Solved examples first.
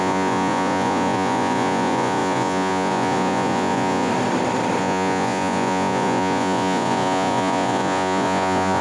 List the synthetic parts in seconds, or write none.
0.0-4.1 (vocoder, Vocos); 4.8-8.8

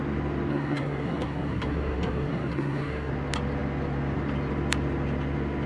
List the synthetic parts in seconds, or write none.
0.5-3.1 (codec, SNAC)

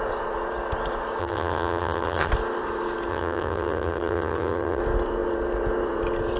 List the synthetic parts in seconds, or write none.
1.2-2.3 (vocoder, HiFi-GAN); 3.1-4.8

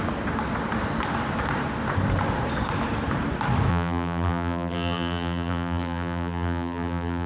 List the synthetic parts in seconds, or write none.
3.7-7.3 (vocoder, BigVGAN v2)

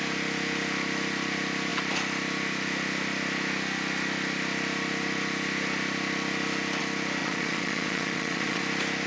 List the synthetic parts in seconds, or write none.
7.2-8.6 (vocoder, Vocos)

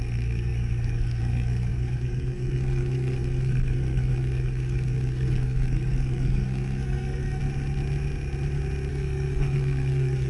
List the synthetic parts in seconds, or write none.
0.0-7.4 (codec, SNAC); 8.9-10.3